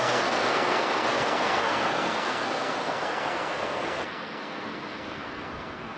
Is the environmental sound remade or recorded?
remade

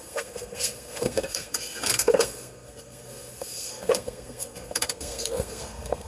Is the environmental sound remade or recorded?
remade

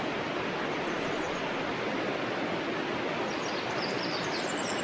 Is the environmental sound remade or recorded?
recorded